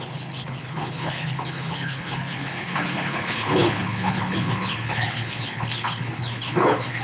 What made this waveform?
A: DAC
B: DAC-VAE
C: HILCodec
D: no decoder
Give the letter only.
C